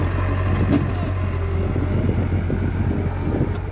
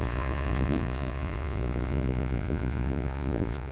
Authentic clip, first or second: first